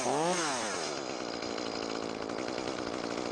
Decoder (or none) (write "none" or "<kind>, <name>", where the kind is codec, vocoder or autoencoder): none